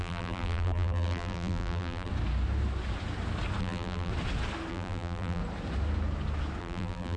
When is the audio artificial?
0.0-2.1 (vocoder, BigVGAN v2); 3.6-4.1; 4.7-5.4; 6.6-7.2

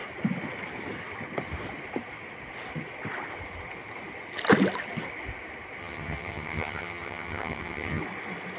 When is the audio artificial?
5.8-8.0 (vocoder, HiFi-GAN)

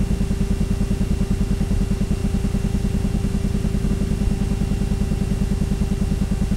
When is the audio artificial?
none